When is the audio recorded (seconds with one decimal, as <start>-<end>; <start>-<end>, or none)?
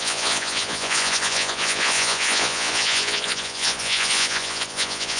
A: none